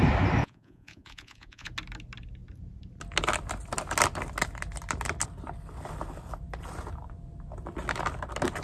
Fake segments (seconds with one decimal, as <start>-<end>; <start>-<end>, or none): 0.4-1.7